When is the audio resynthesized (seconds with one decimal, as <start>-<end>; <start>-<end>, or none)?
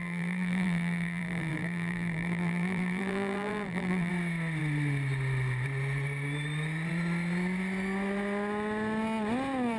0.0-4.1